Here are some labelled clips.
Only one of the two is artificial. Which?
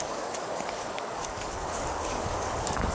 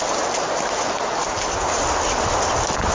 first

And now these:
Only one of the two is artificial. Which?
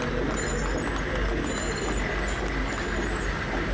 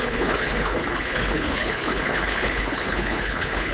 second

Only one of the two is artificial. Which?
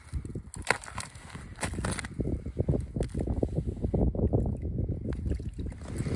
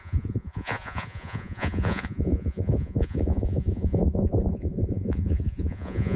second